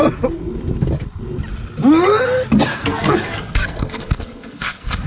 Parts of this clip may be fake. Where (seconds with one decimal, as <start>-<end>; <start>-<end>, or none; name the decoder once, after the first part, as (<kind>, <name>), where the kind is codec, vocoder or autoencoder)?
2.7-5.1 (codec, SNAC)